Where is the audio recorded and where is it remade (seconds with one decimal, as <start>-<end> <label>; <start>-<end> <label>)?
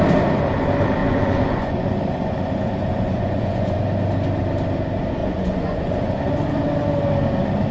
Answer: 0.0-1.0 recorded; 1.0-3.8 remade; 3.8-5.2 recorded; 5.2-6.3 remade; 6.3-7.7 recorded